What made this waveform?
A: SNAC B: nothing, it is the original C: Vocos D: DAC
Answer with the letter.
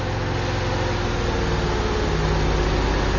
B